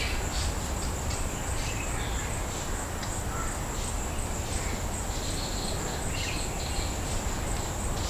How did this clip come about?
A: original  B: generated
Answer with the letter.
A